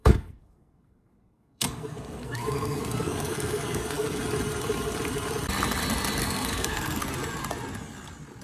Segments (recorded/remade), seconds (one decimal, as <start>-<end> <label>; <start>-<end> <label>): 0.0-4.2 remade; 4.2-6.2 recorded; 6.2-7.0 remade; 7.0-8.4 recorded